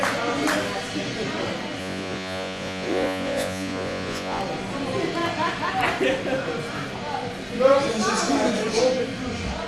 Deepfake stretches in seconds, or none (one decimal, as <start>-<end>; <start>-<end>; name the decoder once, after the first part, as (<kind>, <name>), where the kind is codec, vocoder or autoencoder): 1.8-4.4 (vocoder, Vocos)